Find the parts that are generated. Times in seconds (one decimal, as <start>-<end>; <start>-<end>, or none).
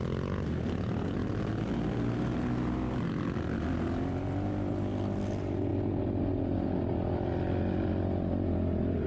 none